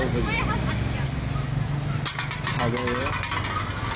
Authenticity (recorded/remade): recorded